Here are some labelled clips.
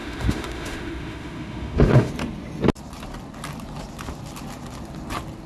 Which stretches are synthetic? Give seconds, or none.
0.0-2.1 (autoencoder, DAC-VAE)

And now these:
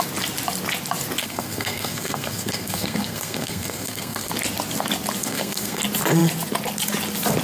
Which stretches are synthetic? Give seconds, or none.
1.2-4.3 (codec, SNAC); 5.2-5.8